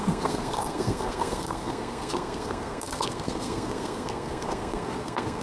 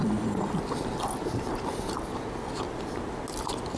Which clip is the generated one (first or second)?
first